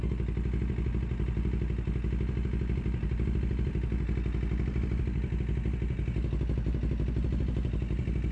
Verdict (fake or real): real